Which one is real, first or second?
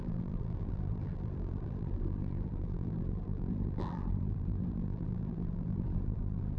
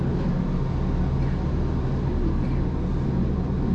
second